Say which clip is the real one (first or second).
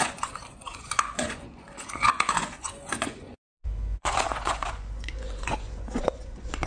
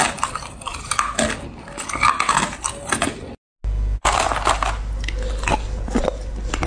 second